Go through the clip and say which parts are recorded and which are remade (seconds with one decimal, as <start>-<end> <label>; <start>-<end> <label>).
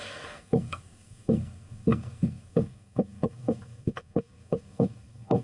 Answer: 0.0-5.4 remade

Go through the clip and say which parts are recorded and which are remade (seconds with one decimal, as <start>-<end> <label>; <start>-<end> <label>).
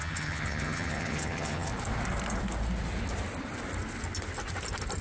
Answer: 0.0-1.7 remade; 1.7-5.0 recorded